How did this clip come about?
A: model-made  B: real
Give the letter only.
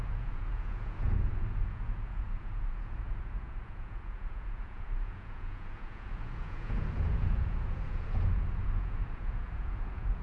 A